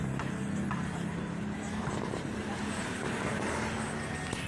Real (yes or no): yes